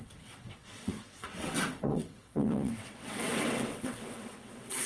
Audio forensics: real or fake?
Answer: fake